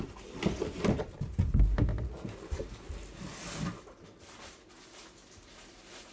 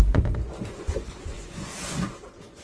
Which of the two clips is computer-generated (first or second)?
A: second